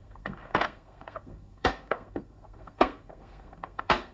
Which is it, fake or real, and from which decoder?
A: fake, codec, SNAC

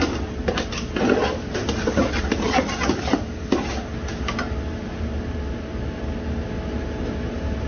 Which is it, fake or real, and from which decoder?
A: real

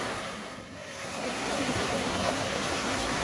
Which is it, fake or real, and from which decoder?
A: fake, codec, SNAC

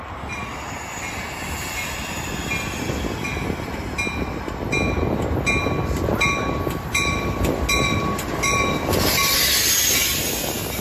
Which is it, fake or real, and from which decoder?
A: real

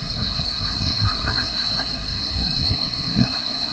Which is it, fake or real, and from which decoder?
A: fake, codec, SNAC